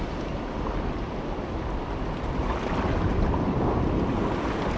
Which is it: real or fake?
real